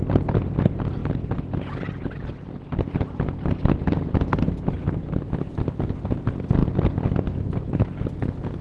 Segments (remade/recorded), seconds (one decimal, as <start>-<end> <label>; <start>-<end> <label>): 0.0-8.6 recorded